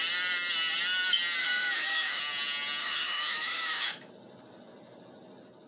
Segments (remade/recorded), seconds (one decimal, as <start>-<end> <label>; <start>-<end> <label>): 0.0-1.4 recorded; 1.4-2.2 remade; 2.2-2.8 recorded; 2.8-4.1 remade; 4.1-5.7 recorded